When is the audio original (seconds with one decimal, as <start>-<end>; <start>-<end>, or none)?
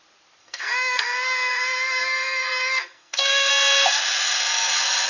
0.0-0.4; 3.5-5.1